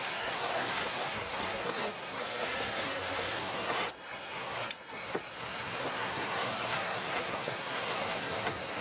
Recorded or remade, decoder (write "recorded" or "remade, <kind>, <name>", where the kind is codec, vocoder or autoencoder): remade, codec, SNAC